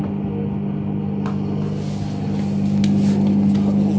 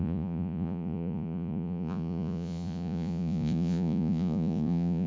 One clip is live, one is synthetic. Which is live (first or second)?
first